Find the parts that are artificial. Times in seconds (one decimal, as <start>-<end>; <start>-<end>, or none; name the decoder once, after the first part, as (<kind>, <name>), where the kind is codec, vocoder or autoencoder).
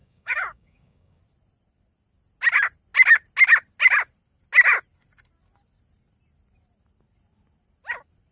0.0-1.2 (codec, DAC)